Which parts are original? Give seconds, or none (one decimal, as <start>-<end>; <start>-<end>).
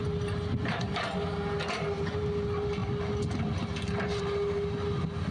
0.0-5.3